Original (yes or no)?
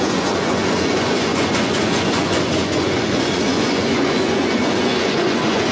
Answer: no